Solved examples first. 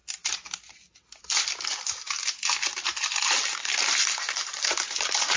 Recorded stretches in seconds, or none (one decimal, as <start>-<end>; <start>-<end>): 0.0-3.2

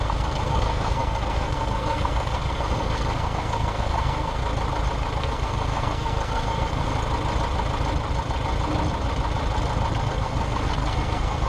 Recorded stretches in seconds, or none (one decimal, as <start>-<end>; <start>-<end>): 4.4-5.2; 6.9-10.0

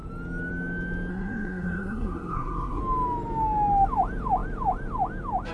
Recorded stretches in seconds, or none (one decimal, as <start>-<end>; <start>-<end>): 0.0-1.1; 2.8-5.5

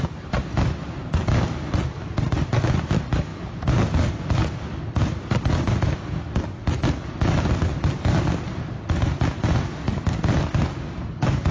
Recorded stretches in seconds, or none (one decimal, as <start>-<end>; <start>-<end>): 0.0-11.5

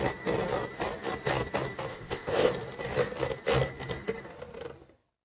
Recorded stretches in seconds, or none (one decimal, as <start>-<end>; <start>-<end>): 0.0-1.9; 2.5-5.2